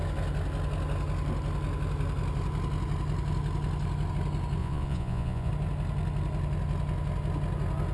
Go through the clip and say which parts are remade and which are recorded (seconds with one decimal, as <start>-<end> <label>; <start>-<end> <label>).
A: 0.0-4.6 recorded; 4.6-5.5 remade; 5.5-7.9 recorded